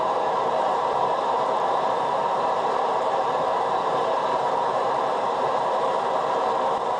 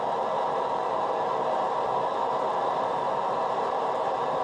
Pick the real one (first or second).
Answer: second